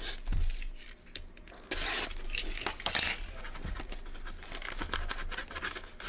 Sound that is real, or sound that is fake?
real